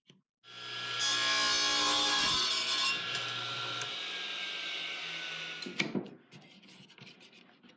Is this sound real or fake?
real